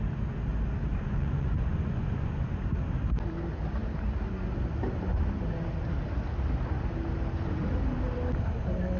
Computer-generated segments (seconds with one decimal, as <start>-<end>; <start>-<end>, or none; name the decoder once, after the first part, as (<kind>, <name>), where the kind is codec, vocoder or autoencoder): 0.9-2.3 (vocoder, Vocos)